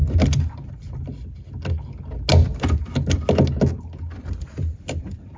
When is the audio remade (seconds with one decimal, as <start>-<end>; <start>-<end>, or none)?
0.7-1.1; 4.3-5.4